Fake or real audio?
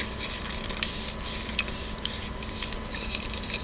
real